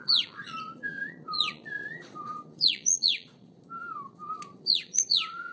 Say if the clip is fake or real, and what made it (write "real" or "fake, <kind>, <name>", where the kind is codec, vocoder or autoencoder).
fake, vocoder, Vocos